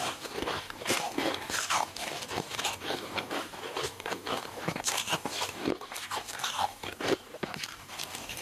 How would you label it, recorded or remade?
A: remade